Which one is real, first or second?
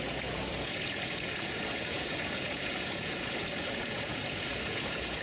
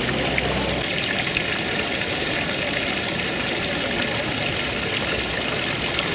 second